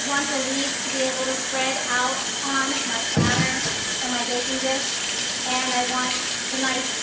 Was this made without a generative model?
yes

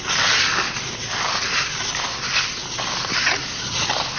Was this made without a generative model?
yes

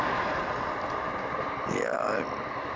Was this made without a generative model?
yes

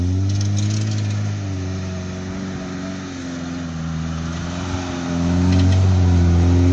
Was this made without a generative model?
yes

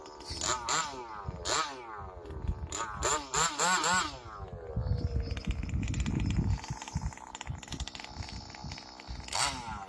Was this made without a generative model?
yes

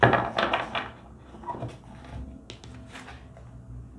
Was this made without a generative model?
yes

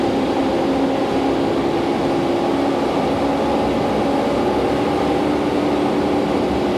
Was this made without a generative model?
yes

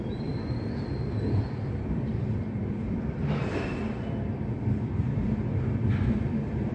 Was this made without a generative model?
yes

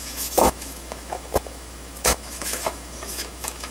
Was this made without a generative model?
no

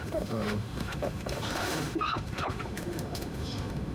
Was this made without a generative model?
no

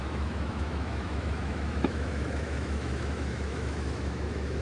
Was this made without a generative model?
no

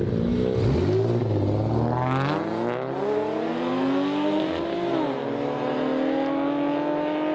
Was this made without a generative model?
yes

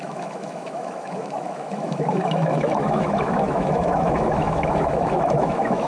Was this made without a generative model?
no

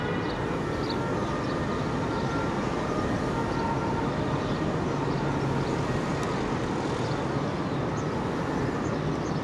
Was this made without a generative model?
yes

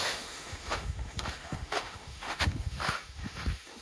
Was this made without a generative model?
no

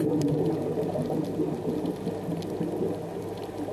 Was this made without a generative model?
yes